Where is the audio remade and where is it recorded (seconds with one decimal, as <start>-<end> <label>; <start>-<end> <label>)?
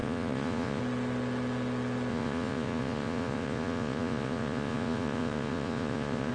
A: 0.0-0.8 remade; 0.8-2.1 recorded; 2.1-6.3 remade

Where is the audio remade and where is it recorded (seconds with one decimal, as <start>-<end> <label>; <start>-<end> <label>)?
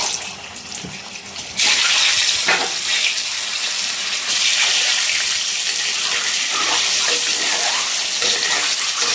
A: 0.0-9.1 recorded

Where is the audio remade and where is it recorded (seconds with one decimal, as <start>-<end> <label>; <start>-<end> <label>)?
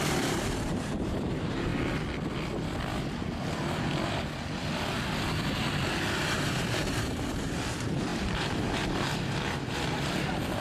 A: 0.0-1.7 remade; 1.7-6.1 recorded; 6.1-10.6 remade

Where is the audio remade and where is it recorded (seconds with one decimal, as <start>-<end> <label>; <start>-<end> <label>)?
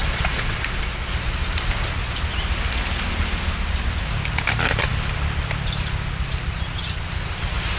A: 0.0-1.1 remade; 1.1-7.8 recorded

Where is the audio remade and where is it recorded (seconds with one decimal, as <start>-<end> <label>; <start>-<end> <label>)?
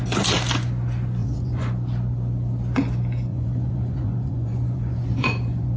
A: 0.0-1.2 recorded; 1.2-1.7 remade; 1.7-3.3 recorded; 3.3-5.8 remade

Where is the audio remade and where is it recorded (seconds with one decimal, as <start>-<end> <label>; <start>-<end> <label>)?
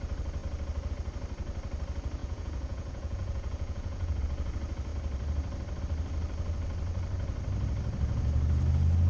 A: 0.0-2.2 recorded; 2.2-4.2 remade; 4.2-9.1 recorded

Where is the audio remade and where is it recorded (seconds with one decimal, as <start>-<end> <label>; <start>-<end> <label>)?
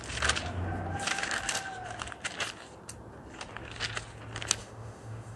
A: 0.0-4.6 recorded; 4.6-5.4 remade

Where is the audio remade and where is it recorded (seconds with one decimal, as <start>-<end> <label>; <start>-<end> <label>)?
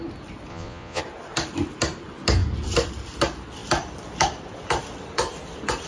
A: 0.0-0.5 recorded; 0.5-1.0 remade; 1.0-5.9 recorded